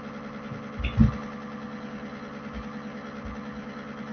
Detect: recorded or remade recorded